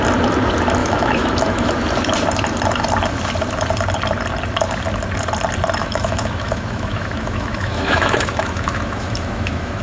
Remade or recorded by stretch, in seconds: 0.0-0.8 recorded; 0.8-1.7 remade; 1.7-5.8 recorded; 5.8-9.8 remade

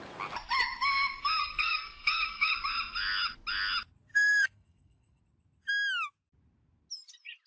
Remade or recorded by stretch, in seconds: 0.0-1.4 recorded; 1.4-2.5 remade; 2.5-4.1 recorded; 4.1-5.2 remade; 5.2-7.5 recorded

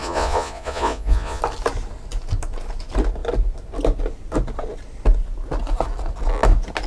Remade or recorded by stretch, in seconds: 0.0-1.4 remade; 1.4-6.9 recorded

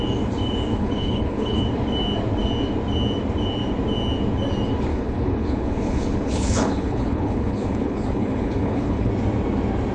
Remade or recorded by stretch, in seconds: 0.0-0.7 recorded; 0.7-1.6 remade; 1.6-4.9 recorded; 4.9-9.1 remade; 9.1-9.9 recorded